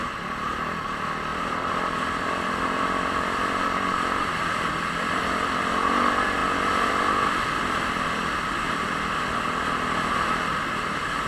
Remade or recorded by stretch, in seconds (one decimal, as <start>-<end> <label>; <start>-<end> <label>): 0.0-1.3 recorded; 1.3-5.6 remade; 5.6-11.3 recorded